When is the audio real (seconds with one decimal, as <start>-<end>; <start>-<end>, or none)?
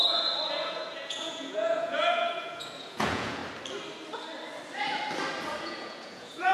3.4-5.6